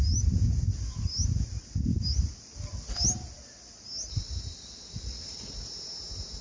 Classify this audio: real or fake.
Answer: real